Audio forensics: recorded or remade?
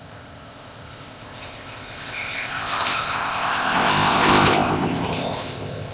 remade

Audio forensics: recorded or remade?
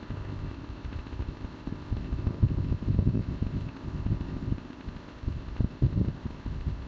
remade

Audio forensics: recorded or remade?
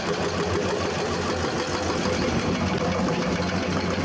recorded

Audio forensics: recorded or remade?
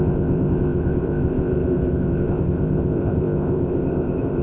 remade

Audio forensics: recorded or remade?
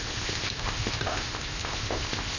remade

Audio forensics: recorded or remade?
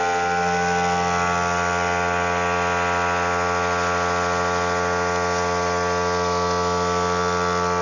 recorded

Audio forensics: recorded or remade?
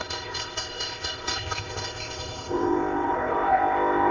remade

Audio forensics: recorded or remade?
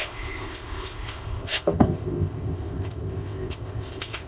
remade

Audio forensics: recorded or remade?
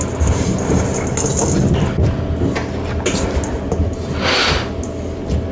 recorded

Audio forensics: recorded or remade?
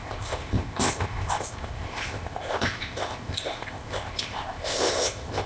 remade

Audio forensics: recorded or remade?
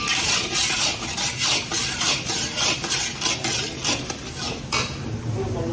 recorded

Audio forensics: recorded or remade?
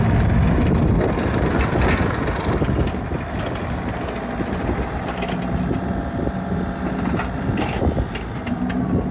recorded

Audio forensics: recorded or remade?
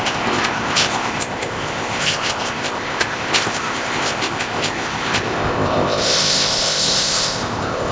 remade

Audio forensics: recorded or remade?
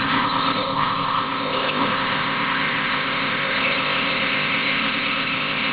remade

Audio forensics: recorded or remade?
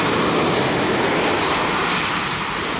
recorded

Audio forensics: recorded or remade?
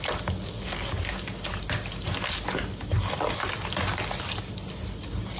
recorded